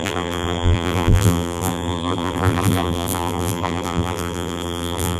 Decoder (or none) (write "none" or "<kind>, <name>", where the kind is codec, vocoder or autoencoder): vocoder, BigVGAN v2